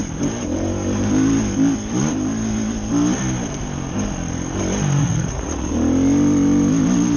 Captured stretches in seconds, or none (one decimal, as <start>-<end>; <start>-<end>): 0.0-5.0; 5.7-7.2